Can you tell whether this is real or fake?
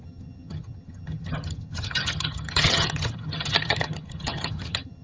fake